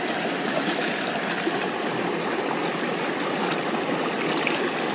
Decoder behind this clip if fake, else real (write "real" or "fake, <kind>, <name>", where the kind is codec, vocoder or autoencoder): real